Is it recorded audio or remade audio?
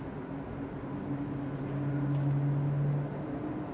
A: recorded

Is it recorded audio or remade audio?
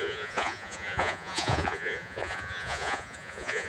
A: remade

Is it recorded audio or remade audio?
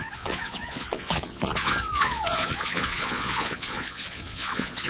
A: remade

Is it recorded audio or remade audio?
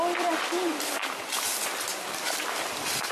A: recorded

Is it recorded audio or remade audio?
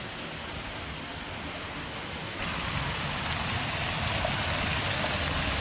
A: recorded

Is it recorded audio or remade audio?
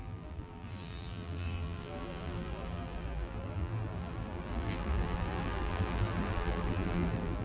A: remade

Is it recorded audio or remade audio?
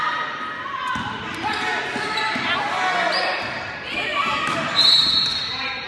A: recorded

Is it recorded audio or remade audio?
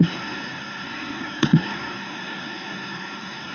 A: remade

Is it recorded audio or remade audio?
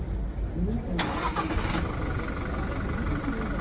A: recorded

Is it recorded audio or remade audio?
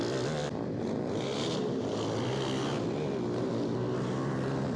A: recorded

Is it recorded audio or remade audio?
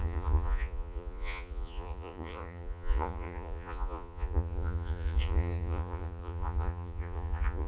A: remade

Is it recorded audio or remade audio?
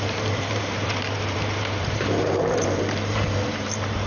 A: remade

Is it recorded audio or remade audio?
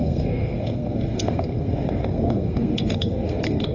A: remade